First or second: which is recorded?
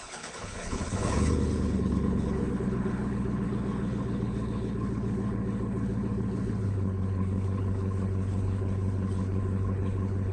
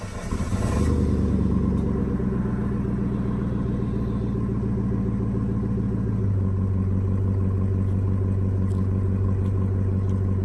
second